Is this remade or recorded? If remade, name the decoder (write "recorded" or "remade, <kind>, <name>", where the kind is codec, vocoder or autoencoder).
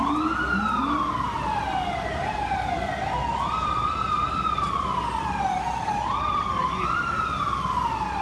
recorded